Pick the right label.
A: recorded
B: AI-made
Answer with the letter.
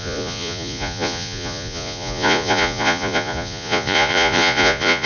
B